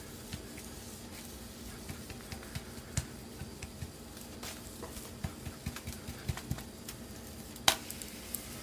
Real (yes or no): yes